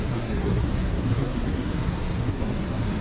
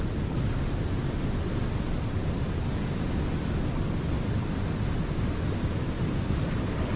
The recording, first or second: second